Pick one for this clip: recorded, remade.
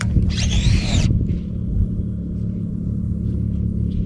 remade